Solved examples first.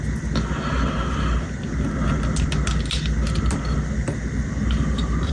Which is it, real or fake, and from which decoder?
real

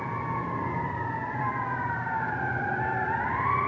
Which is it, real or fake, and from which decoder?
fake, vocoder, BigVGAN v2